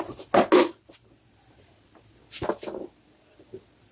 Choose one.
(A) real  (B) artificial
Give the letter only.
A